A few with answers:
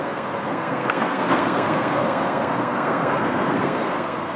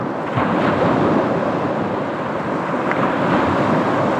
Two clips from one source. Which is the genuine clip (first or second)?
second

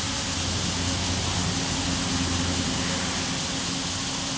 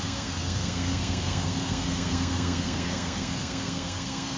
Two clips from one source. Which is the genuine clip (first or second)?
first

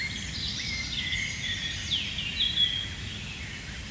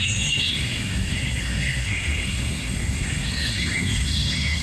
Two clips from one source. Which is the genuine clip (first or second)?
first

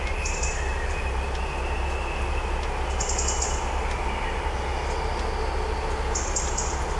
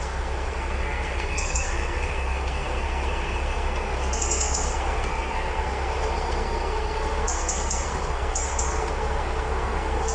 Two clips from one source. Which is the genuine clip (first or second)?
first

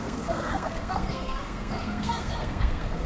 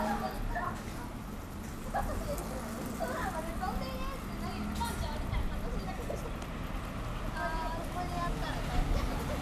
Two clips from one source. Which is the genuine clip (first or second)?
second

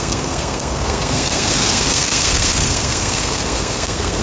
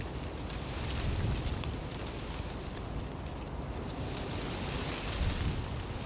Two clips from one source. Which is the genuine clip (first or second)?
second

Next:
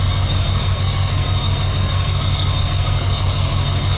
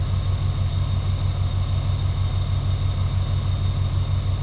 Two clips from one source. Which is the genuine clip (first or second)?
second